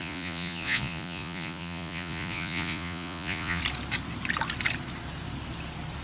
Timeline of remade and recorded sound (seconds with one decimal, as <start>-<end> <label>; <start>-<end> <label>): 0.0-3.6 remade; 3.6-6.0 recorded